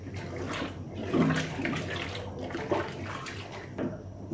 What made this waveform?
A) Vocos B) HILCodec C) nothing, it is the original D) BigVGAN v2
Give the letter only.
C